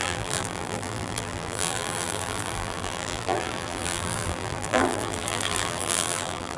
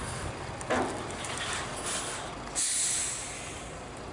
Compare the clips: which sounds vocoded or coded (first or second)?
first